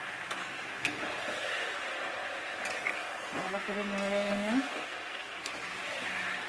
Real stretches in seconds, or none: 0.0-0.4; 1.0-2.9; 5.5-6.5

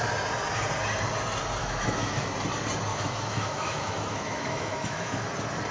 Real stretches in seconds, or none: 0.0-1.6; 2.2-2.9; 5.2-5.7

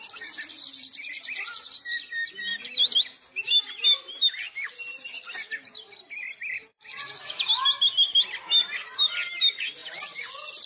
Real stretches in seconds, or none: 0.0-9.8

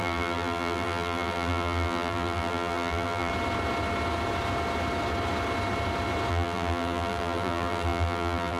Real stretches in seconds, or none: 3.3-6.3

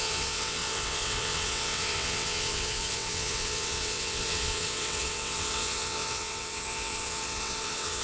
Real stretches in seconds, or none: none